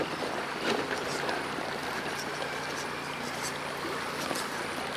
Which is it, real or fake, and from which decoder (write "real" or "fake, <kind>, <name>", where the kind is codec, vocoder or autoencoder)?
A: real